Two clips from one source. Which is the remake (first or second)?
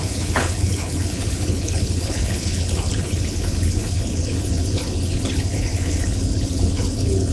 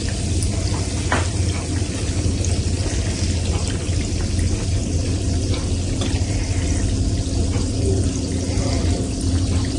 first